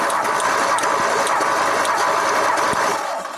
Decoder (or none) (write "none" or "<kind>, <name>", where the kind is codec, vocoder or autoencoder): none